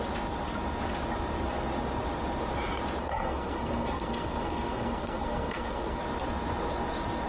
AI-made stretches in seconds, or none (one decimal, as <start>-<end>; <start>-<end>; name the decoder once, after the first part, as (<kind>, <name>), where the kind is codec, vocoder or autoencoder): 3.0-6.0 (codec, SNAC)